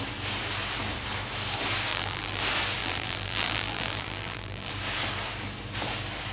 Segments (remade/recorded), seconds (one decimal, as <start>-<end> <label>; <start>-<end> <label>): 0.0-1.9 recorded; 1.9-2.4 remade; 2.4-2.8 recorded; 2.8-4.7 remade; 4.7-6.3 recorded